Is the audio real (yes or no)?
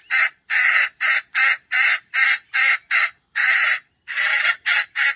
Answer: yes